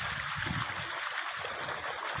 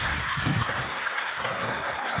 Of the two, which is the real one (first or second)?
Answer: first